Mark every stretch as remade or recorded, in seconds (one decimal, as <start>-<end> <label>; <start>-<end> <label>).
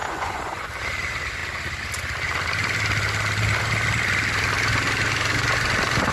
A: 0.0-0.7 remade; 0.7-6.1 recorded